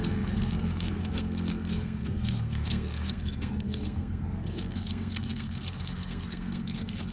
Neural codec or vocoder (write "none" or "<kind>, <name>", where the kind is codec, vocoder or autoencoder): codec, SNAC